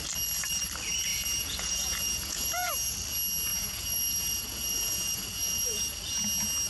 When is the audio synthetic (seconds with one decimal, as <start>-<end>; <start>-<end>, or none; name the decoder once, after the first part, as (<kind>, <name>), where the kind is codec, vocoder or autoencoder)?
1.1-2.7 (vocoder, Vocos); 3.5-5.8